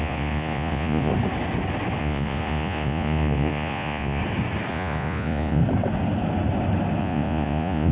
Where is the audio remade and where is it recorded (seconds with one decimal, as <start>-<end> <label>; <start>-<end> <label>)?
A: 0.0-1.1 remade; 1.1-2.0 recorded; 2.0-4.2 remade; 4.2-4.7 recorded; 4.7-5.6 remade; 5.6-7.0 recorded; 7.0-7.9 remade